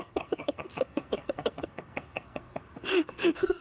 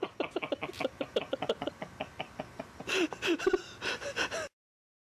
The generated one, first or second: first